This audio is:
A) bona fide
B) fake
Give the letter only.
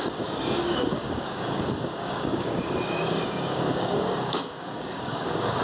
B